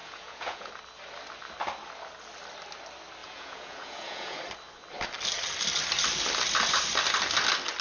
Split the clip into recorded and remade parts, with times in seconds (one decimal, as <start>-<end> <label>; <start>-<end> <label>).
0.0-0.7 remade; 0.7-3.2 recorded; 3.2-4.4 remade; 4.4-7.8 recorded